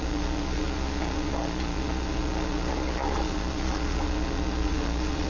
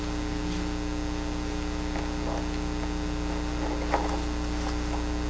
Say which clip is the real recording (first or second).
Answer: second